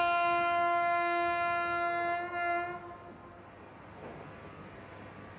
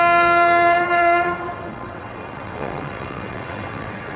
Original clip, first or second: first